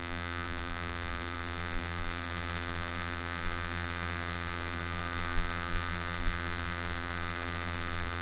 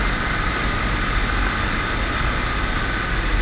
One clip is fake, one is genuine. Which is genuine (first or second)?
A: second